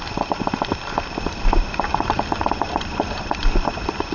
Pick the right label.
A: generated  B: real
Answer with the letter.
B